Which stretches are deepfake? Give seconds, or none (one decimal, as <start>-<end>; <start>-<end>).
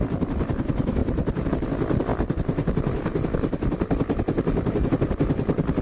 none